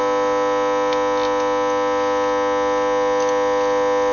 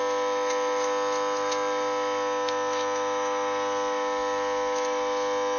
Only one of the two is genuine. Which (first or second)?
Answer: first